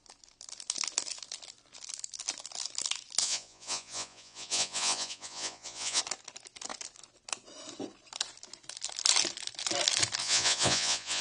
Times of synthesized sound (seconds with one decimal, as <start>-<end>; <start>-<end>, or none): 3.2-6.0; 10.2-11.2